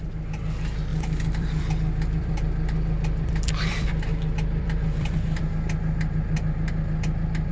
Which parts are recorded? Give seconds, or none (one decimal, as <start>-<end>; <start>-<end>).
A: 0.0-0.9; 5.4-7.5